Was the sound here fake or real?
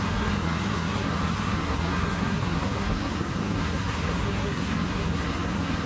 fake